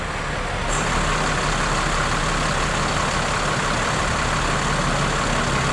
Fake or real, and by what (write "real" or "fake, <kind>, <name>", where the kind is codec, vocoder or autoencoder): real